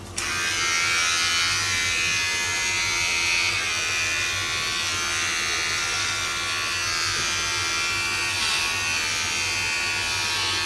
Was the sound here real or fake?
real